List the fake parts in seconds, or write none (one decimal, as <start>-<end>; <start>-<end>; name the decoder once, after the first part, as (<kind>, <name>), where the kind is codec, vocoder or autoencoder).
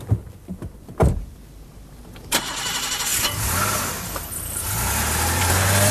none